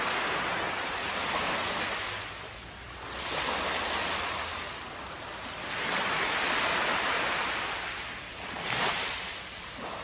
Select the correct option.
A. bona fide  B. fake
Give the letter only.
A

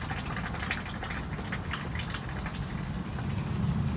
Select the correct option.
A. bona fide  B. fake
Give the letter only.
A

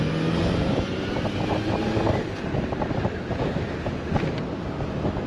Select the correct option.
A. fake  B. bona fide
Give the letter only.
B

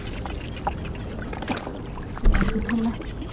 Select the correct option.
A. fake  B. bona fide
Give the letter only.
B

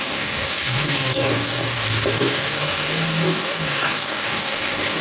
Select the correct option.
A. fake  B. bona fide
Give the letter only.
A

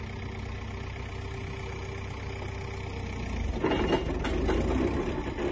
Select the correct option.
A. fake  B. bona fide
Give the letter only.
B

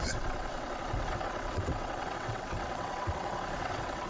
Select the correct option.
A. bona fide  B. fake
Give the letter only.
B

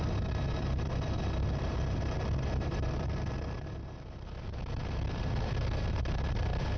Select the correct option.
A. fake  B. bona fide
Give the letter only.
A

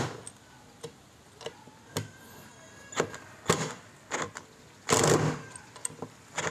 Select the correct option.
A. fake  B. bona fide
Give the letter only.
B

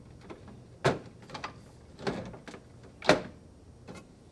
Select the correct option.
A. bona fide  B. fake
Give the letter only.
A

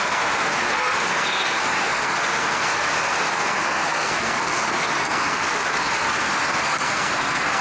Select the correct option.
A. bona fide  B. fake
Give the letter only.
B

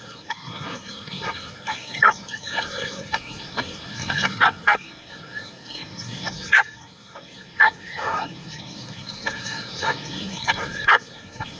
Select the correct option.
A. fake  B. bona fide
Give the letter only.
A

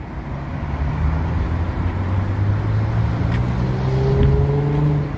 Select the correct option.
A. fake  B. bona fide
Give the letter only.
B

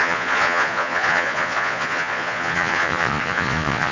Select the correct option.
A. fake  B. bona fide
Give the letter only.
A